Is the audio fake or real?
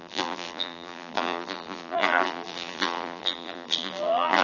fake